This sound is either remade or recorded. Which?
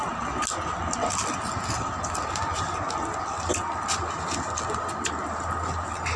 recorded